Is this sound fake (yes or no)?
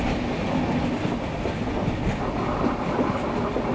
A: no